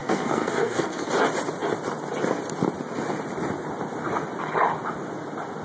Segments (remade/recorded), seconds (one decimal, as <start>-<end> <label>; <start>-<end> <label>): 0.0-1.1 remade; 1.1-5.6 recorded